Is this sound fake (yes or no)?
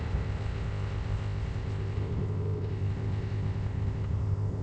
yes